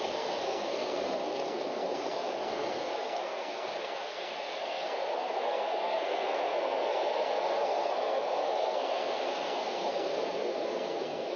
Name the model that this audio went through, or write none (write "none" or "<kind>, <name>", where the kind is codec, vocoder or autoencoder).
codec, SNAC